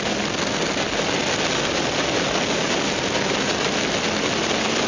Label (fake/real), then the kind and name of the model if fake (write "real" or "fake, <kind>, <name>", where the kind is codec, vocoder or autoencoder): real